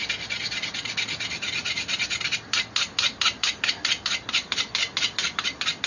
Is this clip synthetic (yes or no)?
no